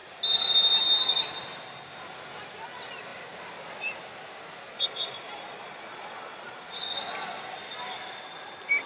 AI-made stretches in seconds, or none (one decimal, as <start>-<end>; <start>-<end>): 4.7-6.8